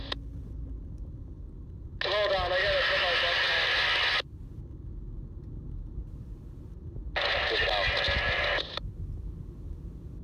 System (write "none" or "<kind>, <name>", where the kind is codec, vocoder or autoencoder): none